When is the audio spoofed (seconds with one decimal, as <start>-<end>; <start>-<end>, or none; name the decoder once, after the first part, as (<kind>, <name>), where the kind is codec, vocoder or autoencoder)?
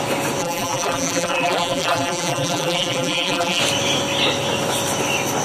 0.4-3.6 (vocoder, BigVGAN v2)